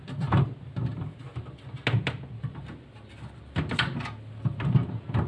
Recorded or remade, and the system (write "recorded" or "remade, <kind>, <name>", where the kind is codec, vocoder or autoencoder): recorded